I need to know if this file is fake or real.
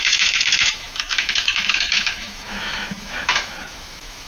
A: fake